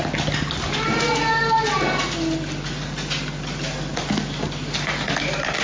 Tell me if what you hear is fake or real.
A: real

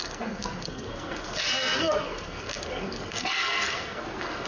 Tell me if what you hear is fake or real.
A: fake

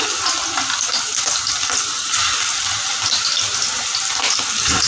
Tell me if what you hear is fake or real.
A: real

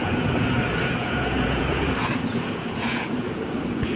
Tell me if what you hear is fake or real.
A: fake